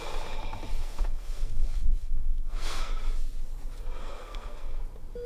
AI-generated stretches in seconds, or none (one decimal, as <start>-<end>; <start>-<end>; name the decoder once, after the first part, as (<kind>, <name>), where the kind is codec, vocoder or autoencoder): 0.7-2.9 (codec, SNAC); 4.0-4.8